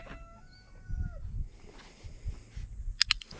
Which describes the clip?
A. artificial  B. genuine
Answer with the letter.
B